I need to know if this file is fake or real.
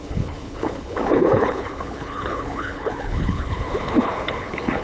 fake